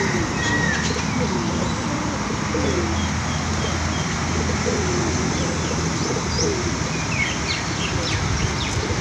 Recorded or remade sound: recorded